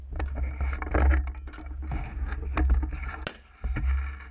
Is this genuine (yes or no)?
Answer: yes